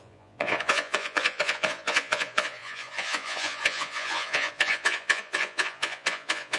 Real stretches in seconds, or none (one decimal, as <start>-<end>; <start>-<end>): none